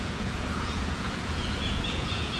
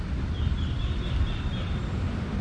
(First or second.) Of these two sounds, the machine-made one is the first